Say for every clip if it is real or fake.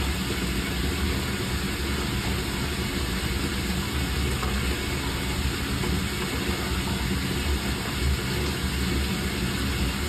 real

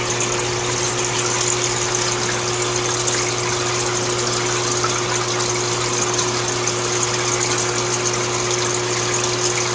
real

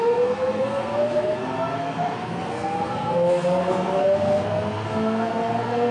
fake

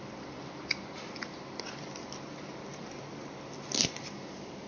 real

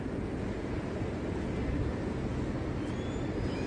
real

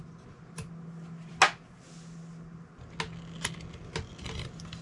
real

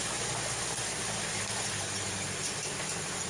real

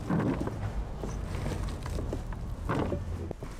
real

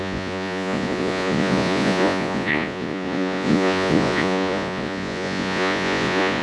fake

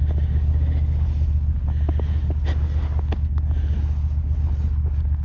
real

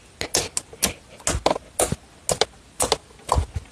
real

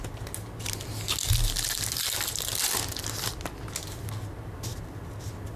real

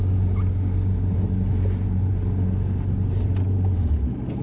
real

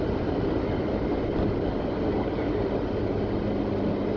real